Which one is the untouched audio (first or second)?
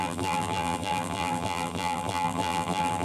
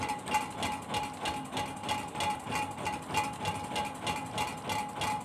second